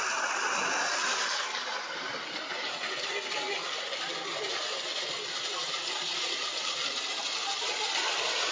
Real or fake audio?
real